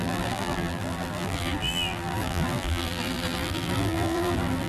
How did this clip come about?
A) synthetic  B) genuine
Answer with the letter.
A